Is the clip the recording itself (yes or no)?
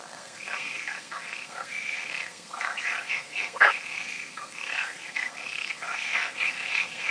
no